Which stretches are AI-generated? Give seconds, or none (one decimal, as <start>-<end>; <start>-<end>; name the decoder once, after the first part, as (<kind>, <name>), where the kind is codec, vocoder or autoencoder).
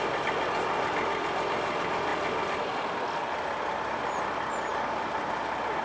none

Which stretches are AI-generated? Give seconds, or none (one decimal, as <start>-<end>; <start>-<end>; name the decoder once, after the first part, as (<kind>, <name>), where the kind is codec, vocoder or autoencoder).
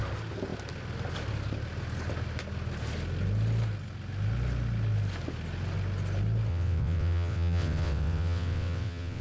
6.5-9.2 (vocoder, WaveNeXt)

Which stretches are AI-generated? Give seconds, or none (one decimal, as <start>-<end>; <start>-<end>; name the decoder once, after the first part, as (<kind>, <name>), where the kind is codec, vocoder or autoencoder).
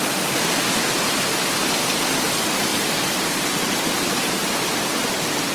2.7-4.6 (vocoder, BigVGAN v2)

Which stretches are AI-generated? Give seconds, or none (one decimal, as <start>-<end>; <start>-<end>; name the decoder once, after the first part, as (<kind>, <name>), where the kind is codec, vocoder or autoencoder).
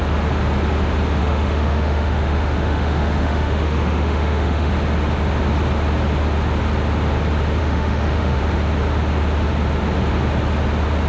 1.2-4.7 (autoencoder, DAC-VAE); 7.6-8.4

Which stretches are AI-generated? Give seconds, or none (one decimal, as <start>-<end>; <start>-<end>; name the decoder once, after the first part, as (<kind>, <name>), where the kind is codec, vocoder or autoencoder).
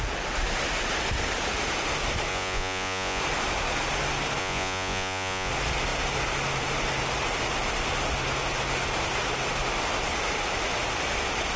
2.3-3.2 (vocoder, Vocos); 4.4-5.5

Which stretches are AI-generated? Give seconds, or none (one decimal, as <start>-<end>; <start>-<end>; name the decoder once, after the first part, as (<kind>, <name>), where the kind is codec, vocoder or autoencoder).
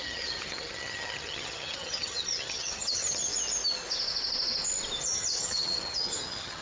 0.0-3.3 (vocoder, HiFi-GAN); 5.0-6.6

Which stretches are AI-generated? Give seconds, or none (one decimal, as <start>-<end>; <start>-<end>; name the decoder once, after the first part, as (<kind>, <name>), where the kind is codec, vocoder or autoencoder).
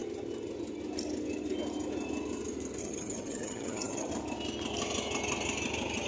2.8-4.1 (vocoder, HiFi-GAN)